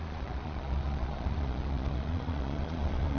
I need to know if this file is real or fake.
fake